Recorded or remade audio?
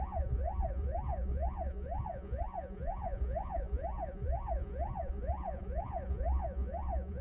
remade